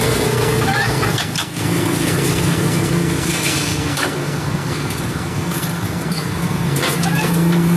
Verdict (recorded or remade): remade